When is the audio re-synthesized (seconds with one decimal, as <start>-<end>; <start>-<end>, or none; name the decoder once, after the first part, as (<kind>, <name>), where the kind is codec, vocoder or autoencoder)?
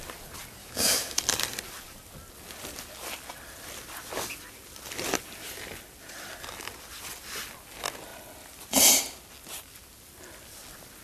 0.6-1.2 (autoencoder, DAC-VAE)